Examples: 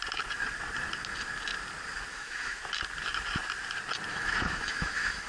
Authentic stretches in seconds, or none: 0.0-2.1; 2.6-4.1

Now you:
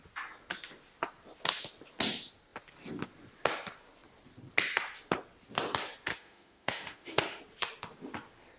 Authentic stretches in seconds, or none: 0.0-6.1; 7.4-8.6

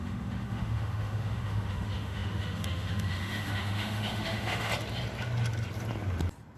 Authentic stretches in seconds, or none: 4.7-6.6